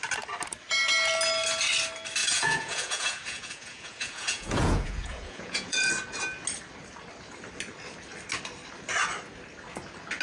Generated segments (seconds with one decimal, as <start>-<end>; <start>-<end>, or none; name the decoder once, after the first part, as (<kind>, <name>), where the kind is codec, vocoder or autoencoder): 2.2-5.9 (vocoder, Vocos)